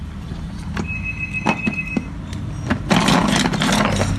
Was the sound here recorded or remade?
recorded